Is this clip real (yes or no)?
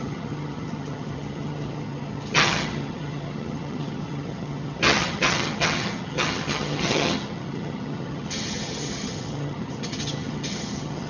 no